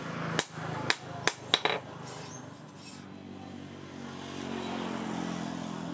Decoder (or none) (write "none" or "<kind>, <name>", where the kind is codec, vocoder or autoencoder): none